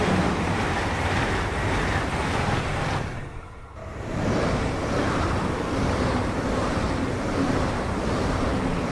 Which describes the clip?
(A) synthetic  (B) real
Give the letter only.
A